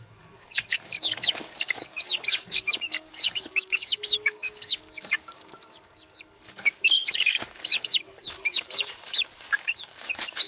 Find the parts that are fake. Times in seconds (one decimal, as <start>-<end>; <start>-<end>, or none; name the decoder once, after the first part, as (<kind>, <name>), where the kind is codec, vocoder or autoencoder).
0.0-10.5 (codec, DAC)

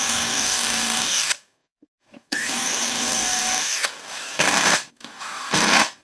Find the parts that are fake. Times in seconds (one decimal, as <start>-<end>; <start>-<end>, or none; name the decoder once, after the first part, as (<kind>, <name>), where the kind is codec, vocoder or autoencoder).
0.0-6.0 (codec, DAC)

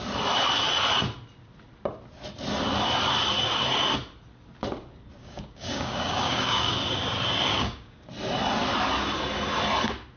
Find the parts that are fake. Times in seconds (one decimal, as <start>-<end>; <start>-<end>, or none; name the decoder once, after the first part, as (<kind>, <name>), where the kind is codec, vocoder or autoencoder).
5.2-6.7 (codec, DAC); 7.5-8.0